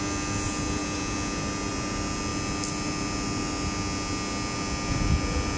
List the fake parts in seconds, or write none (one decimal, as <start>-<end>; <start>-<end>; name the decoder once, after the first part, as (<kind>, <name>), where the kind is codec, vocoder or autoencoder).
none